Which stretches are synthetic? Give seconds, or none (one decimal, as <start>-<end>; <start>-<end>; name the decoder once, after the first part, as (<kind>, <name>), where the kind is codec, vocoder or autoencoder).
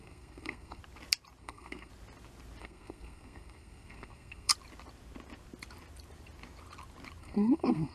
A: 0.0-0.8 (codec, SNAC); 1.4-1.9; 2.6-4.5; 7.2-7.9